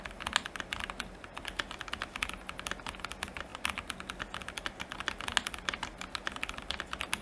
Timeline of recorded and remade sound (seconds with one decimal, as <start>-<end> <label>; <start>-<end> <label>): 0.0-7.2 recorded